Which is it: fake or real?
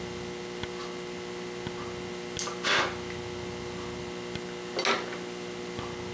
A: real